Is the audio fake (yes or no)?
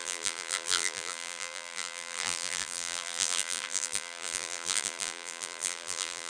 yes